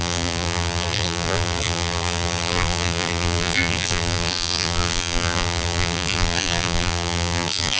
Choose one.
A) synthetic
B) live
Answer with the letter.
A